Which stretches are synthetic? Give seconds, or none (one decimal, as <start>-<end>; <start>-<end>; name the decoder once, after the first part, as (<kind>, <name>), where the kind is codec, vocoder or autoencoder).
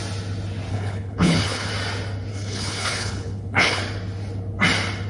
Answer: 0.7-1.7 (codec, HILCodec); 2.3-3.8